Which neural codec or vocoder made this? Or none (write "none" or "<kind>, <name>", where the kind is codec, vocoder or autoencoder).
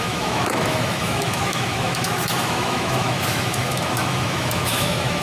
autoencoder, DAC-VAE